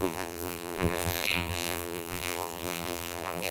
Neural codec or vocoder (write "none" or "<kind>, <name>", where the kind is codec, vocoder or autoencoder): vocoder, BigVGAN v2